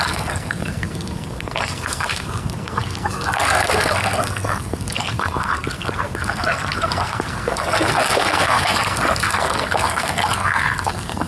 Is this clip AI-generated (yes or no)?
yes